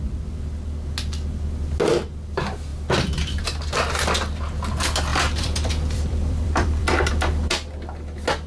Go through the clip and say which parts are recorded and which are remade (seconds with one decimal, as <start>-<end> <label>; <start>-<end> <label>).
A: 0.0-5.1 recorded; 5.1-7.1 remade; 7.1-8.5 recorded